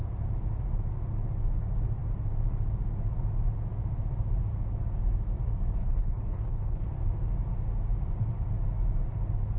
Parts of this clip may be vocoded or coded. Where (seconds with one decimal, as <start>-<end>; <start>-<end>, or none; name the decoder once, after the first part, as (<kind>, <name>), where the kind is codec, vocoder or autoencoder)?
5.8-6.8 (codec, HILCodec)